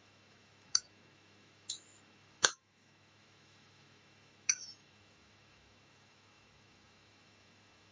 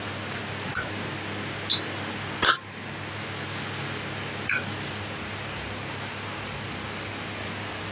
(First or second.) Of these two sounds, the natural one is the second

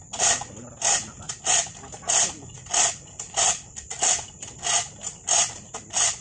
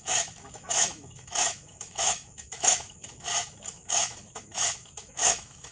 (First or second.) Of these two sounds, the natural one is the first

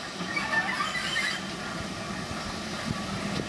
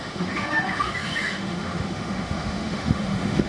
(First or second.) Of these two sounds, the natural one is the first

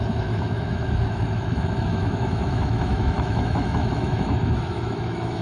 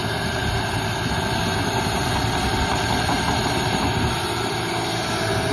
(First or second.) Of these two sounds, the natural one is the second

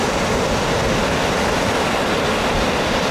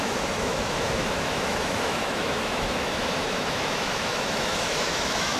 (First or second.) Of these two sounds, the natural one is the first